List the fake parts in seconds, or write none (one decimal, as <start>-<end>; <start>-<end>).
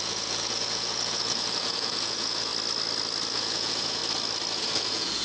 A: 0.0-2.5; 3.3-4.0; 4.6-5.2